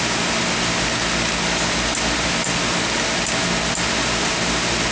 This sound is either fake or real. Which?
real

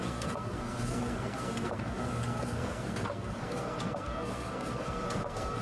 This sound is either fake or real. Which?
fake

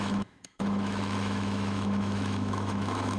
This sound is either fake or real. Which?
fake